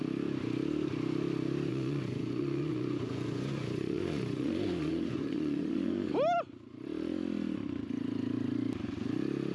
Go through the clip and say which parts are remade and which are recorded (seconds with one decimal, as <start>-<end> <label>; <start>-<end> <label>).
0.0-1.7 recorded; 1.7-6.1 remade; 6.1-9.5 recorded